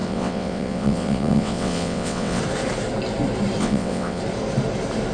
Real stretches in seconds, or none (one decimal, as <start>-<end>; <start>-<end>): 2.4-3.6; 4.2-5.1